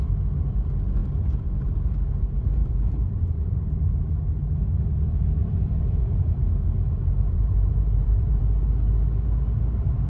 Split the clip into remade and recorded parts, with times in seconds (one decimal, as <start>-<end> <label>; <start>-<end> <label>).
0.0-2.6 recorded; 2.6-3.9 remade; 3.9-5.4 recorded; 5.4-8.4 remade; 8.4-10.1 recorded